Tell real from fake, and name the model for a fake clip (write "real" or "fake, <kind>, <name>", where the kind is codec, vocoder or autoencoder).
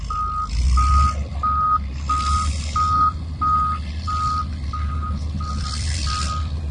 real